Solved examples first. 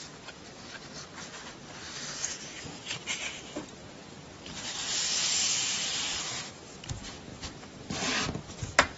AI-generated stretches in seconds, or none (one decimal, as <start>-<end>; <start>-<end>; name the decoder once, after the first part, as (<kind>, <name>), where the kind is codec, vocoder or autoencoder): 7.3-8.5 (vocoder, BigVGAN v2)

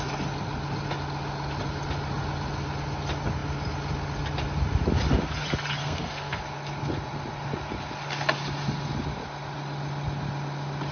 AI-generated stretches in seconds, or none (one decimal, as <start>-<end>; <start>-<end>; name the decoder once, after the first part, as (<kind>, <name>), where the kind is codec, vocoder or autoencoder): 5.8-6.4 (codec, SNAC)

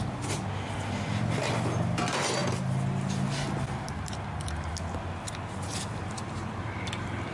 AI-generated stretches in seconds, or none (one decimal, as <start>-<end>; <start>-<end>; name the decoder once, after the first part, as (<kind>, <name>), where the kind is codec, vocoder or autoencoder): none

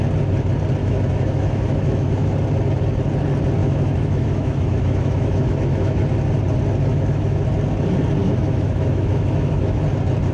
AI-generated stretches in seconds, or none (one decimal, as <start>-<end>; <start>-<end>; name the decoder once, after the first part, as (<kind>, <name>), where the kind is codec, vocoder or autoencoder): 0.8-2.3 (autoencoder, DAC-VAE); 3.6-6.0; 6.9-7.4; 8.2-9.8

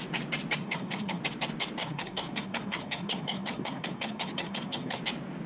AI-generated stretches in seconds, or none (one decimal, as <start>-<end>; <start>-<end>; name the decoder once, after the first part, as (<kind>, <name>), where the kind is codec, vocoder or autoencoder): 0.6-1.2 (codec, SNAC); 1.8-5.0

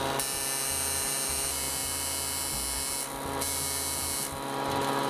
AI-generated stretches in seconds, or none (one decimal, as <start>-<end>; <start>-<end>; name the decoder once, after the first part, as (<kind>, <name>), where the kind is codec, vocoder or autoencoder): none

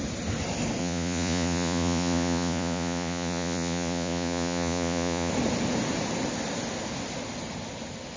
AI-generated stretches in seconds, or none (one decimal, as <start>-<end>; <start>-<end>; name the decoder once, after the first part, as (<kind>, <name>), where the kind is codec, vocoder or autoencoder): 0.8-5.3 (vocoder, Vocos)

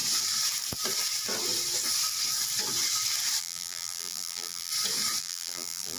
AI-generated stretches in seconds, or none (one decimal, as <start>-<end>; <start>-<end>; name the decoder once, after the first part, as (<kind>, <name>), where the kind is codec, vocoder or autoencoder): 3.4-4.7 (vocoder, BigVGAN v2); 5.2-6.0